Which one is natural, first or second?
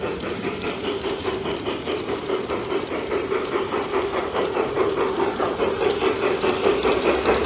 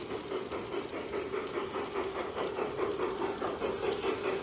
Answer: second